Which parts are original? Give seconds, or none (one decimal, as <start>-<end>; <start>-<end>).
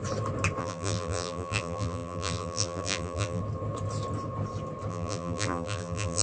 0.0-0.6; 3.4-4.9